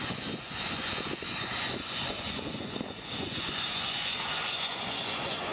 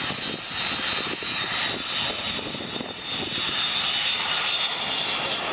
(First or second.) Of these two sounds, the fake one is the first